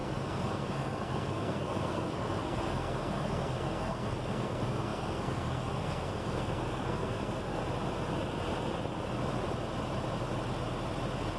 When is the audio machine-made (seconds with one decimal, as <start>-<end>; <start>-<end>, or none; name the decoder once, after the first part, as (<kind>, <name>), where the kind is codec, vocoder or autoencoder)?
0.0-7.6 (codec, SNAC)